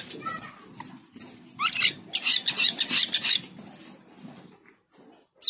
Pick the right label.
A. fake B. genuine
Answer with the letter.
B